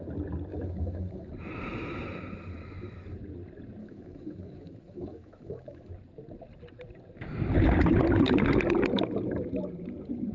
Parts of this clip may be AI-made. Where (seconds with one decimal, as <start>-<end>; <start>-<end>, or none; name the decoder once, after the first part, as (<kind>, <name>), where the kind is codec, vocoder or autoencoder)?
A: 0.5-1.3 (autoencoder, DAC-VAE); 3.8-5.9